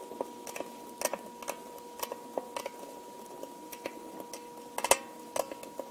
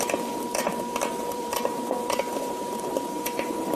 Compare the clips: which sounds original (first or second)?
first